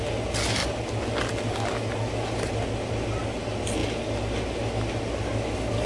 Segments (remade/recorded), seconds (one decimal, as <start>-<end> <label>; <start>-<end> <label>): 0.0-5.9 recorded